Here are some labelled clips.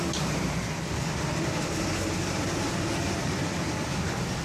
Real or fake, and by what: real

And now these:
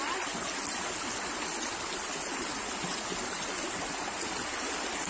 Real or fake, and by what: real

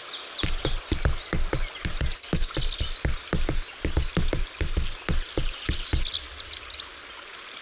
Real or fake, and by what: real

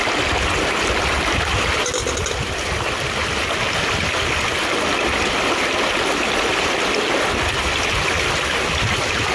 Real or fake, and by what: real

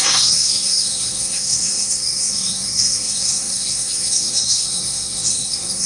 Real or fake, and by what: fake, codec, SNAC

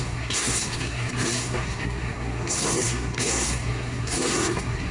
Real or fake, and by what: fake, codec, SNAC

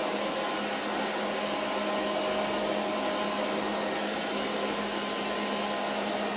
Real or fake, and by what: real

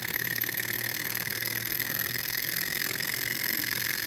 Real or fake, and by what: fake, codec, SNAC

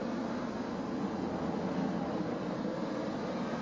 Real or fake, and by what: real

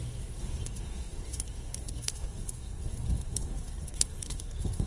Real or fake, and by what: fake, codec, SNAC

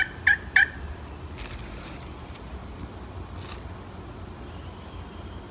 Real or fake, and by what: real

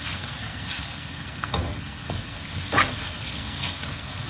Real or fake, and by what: fake, codec, SNAC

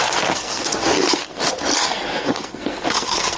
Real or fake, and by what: fake, codec, SNAC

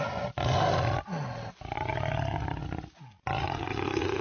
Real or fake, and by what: real